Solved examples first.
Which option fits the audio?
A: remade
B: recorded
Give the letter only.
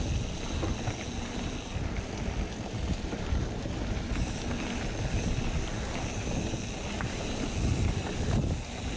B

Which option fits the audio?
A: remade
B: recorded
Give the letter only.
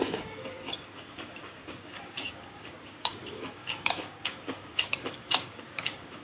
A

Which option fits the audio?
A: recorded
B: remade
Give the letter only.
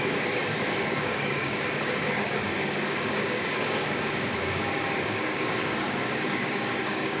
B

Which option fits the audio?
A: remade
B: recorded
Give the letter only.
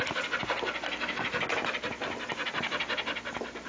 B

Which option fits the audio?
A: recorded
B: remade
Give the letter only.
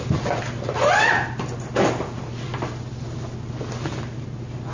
A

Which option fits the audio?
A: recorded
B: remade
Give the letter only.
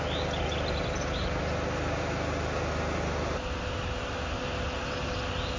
A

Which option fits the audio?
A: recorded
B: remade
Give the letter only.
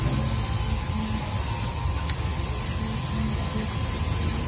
A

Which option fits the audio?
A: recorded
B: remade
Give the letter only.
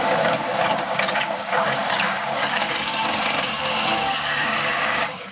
B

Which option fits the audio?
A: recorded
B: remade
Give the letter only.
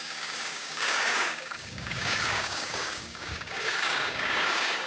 B